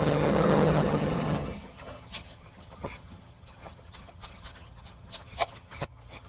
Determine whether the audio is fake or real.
fake